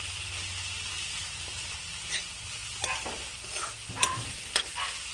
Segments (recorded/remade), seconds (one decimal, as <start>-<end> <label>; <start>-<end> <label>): 0.0-5.1 recorded